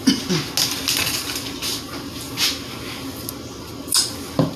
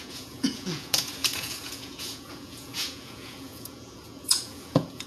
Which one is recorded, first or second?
first